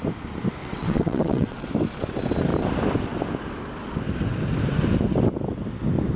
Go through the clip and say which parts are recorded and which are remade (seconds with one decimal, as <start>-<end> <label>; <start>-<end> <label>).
0.0-0.6 recorded; 0.6-1.7 remade; 1.7-6.2 recorded